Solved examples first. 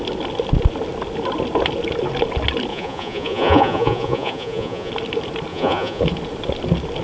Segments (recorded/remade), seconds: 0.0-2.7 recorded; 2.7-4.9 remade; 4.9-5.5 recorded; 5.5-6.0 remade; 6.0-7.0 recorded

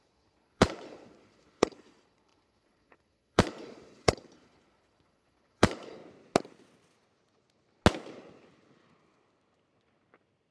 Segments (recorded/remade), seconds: 0.0-6.0 remade; 6.0-10.5 recorded

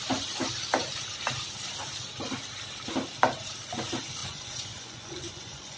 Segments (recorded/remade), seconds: 0.0-4.2 recorded; 4.2-5.8 remade